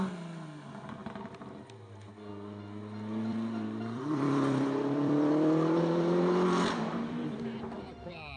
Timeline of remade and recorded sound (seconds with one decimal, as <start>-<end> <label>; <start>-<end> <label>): 0.0-3.3 recorded; 3.3-8.4 remade